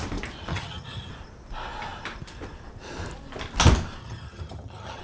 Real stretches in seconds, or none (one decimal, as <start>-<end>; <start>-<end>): 0.0-0.5; 1.1-4.0